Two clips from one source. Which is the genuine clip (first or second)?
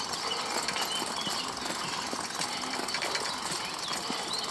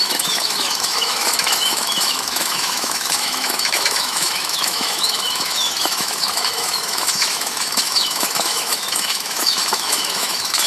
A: first